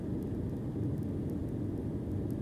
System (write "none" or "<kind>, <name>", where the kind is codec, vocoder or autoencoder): none